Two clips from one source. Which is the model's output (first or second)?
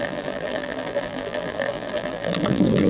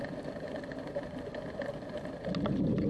first